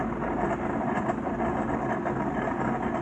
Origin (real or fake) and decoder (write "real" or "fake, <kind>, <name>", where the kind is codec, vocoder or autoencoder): real